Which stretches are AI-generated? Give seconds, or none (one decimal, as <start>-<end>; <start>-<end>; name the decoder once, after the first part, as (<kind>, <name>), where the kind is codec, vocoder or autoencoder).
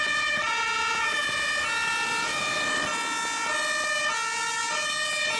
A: none